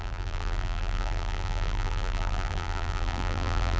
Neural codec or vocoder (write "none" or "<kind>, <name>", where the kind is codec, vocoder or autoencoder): vocoder, BigVGAN v2